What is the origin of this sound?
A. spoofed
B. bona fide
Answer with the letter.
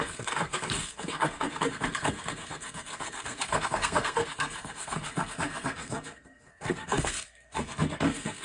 A